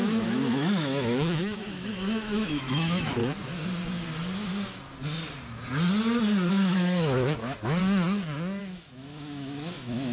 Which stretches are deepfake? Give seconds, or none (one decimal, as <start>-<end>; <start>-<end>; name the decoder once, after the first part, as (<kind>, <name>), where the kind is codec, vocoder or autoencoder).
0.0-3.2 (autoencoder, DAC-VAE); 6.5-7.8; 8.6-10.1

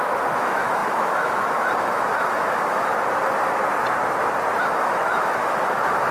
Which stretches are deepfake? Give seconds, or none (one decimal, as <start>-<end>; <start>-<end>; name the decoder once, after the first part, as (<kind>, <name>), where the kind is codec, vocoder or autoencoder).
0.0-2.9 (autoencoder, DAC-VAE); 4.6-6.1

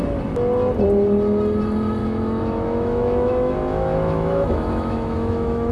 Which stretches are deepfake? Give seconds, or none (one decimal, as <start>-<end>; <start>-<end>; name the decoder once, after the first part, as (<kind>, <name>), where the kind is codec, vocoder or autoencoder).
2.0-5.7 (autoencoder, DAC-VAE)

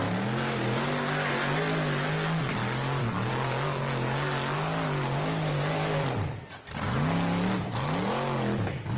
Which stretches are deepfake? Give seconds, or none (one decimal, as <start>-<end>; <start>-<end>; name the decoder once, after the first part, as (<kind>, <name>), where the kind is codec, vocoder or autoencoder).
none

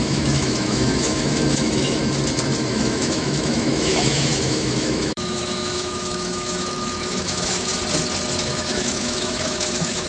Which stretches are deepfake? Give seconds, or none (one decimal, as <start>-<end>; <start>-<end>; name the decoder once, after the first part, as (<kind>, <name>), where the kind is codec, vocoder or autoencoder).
0.0-2.0 (autoencoder, DAC-VAE); 2.7-7.7; 8.4-10.1

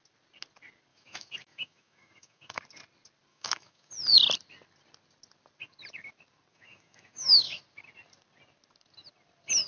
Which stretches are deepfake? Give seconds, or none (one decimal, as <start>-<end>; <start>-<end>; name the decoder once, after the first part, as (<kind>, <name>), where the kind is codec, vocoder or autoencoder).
0.9-2.6 (autoencoder, DAC-VAE); 3.3-3.9; 6.5-7.6

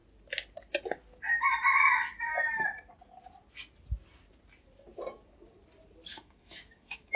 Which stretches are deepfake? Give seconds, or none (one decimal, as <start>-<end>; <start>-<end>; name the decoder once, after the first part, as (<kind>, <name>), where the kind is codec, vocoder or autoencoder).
6.1-7.2 (autoencoder, DAC-VAE)